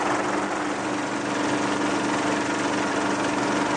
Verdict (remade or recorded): recorded